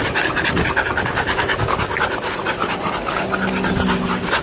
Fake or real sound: real